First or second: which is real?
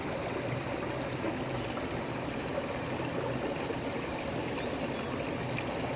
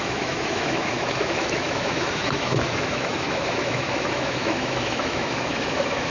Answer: first